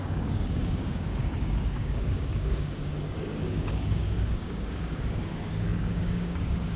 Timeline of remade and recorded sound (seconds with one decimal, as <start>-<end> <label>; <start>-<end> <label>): 0.0-6.8 remade